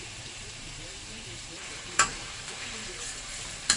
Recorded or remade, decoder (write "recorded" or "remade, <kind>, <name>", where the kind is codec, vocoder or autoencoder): remade, vocoder, BigVGAN v2